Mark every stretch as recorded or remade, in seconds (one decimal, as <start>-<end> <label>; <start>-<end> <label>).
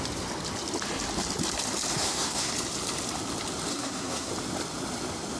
0.0-1.9 recorded; 1.9-2.5 remade; 2.5-3.7 recorded; 3.7-4.3 remade; 4.3-5.4 recorded